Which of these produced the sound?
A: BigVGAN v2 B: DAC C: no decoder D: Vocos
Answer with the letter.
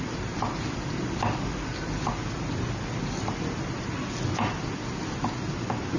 C